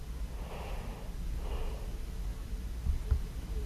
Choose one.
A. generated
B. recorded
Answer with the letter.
B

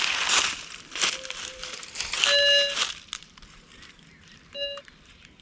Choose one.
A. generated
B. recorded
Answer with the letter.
B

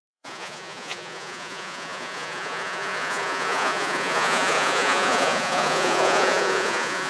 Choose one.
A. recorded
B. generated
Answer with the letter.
B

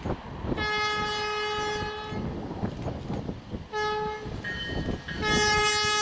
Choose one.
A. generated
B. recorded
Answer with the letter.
B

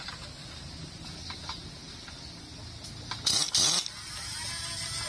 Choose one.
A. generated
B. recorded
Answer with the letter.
B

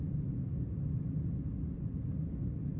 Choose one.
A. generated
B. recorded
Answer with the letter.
A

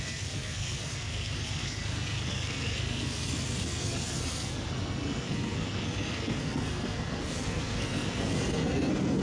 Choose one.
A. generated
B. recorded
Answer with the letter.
A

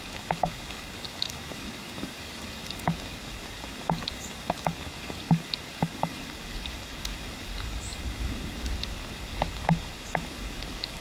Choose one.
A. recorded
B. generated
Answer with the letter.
B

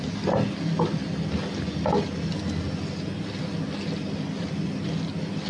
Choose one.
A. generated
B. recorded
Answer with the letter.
B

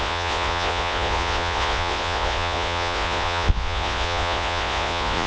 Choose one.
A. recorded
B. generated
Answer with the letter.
B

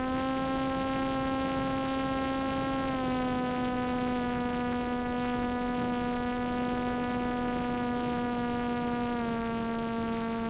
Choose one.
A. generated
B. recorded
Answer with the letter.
B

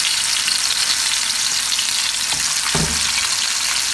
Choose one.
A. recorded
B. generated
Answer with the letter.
A